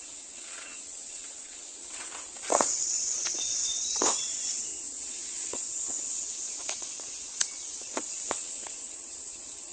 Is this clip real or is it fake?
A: fake